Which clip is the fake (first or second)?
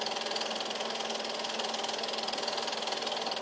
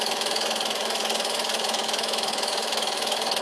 second